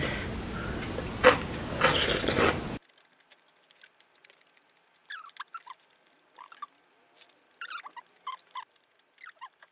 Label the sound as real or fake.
real